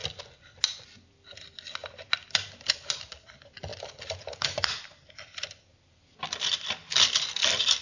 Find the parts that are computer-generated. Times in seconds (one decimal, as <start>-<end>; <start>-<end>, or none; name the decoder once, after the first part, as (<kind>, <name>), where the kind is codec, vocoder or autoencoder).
none